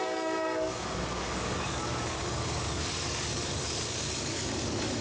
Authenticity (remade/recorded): remade